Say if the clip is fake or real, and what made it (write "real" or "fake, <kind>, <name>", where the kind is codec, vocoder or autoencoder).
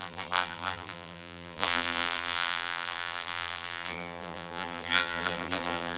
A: fake, vocoder, BigVGAN v2